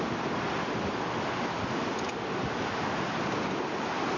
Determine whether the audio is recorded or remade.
recorded